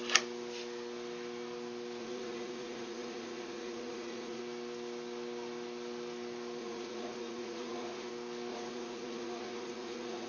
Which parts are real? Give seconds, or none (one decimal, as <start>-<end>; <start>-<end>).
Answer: 0.0-2.0; 4.4-6.6; 8.1-8.5